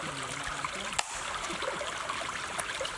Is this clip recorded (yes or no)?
yes